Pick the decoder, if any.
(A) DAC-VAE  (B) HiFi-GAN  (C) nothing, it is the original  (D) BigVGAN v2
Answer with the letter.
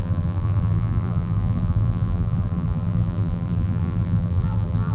D